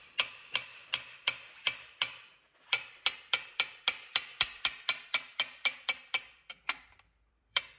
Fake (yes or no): yes